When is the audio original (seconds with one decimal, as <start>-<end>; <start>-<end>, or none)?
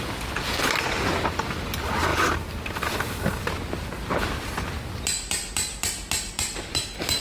0.0-2.1; 3.5-7.2